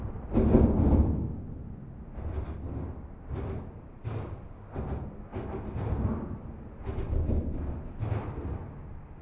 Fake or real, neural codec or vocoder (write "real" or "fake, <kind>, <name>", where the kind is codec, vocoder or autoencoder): real